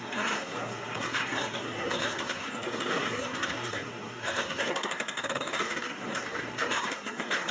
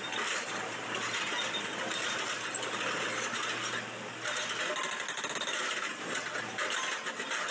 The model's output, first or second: first